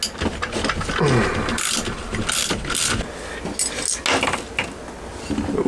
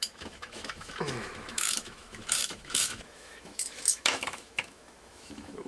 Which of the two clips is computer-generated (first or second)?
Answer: second